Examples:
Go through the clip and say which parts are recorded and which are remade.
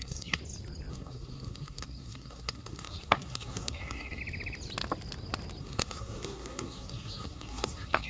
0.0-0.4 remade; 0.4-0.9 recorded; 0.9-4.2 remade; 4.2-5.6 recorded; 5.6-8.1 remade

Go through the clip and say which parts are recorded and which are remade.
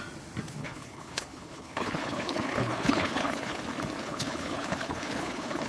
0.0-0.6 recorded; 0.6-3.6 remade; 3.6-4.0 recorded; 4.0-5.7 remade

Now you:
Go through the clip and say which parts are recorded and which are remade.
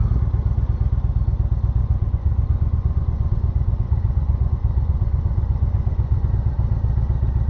0.0-1.8 recorded; 1.8-6.3 remade; 6.3-7.5 recorded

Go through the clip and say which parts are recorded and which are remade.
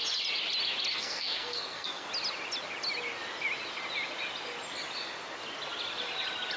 0.0-0.9 recorded; 0.9-2.1 remade; 2.1-6.6 recorded